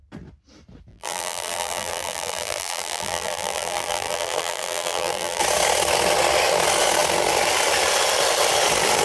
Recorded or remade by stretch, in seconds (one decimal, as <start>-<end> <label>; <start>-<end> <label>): 0.0-0.9 recorded; 0.9-5.4 remade; 5.4-9.0 recorded